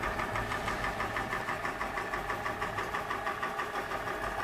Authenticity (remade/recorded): recorded